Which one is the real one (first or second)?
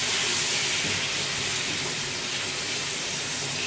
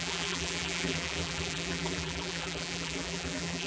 first